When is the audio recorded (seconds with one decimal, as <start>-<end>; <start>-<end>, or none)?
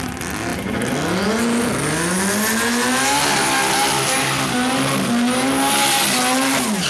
0.0-6.9